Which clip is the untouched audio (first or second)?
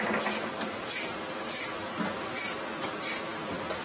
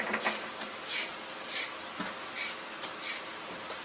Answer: second